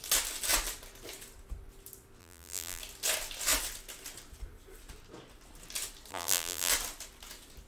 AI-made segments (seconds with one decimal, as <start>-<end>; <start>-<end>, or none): 2.2-2.8; 6.1-6.7